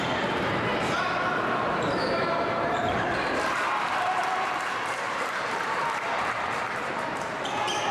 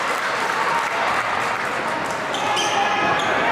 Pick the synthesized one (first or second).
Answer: first